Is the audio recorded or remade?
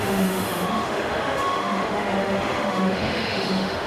remade